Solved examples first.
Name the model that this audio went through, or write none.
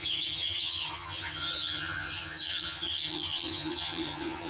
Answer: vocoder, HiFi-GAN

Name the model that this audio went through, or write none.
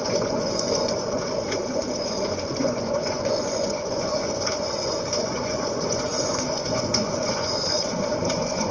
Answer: vocoder, Vocos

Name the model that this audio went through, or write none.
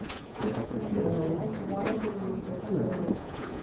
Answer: vocoder, Vocos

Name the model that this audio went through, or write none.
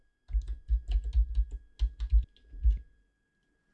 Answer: none